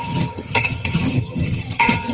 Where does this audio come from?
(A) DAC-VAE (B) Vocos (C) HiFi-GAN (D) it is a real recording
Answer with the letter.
C